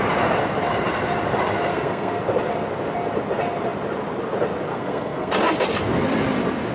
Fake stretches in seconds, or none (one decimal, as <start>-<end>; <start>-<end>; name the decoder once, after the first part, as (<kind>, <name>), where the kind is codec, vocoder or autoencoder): 1.7-2.2 (codec, SNAC); 4.7-5.3